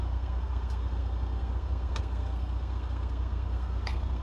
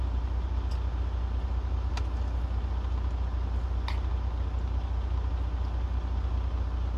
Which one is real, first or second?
second